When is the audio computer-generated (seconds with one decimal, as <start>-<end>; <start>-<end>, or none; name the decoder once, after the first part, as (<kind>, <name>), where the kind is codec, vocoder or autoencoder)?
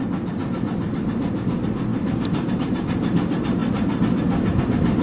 none